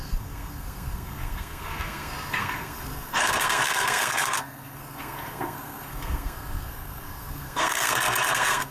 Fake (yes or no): yes